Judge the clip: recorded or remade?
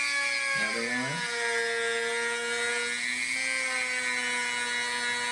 recorded